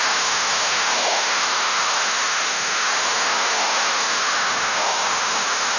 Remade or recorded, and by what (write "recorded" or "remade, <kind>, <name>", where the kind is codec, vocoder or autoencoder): remade, autoencoder, DAC-VAE